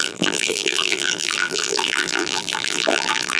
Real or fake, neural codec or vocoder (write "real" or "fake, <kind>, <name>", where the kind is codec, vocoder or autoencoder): fake, vocoder, BigVGAN v2